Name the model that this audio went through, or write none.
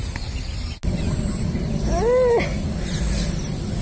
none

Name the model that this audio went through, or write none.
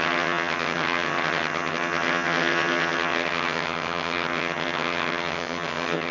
vocoder, HiFi-GAN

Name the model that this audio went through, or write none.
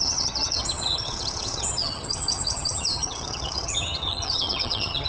vocoder, HiFi-GAN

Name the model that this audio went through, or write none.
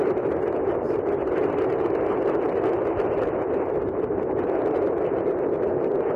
none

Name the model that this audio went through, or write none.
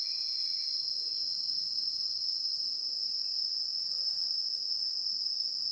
vocoder, Vocos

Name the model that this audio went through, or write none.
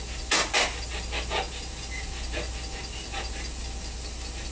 none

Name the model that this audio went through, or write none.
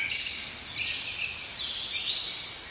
none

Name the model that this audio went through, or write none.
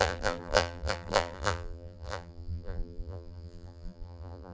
vocoder, BigVGAN v2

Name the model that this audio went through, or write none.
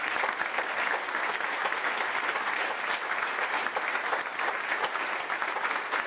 none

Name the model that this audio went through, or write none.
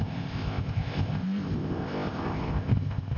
codec, ZipCodec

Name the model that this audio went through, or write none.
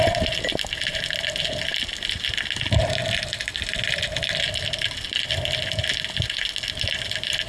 none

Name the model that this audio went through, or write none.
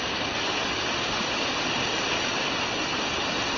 none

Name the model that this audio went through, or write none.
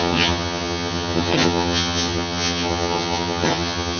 vocoder, HiFi-GAN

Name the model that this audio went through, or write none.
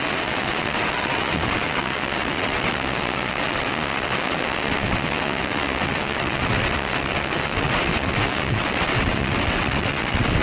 vocoder, WaveNeXt